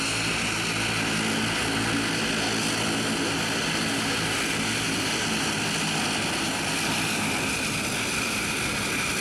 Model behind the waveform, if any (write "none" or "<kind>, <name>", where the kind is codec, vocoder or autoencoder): none